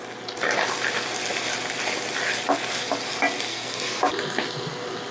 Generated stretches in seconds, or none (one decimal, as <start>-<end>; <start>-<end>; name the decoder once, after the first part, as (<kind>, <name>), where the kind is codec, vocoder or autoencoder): 3.5-4.0 (codec, SNAC)